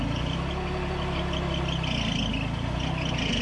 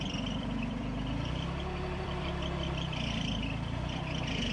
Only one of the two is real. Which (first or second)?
first